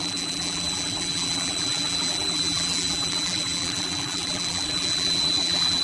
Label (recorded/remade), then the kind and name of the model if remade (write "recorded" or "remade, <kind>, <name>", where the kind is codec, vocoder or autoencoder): remade, vocoder, BigVGAN v2